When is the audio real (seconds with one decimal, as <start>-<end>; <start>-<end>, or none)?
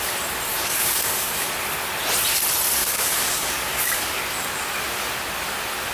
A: 0.0-0.5; 1.5-2.8; 4.2-5.9